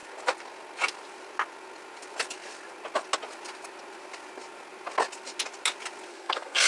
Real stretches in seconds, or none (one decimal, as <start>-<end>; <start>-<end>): 0.0-6.1